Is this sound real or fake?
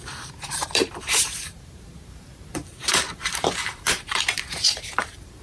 fake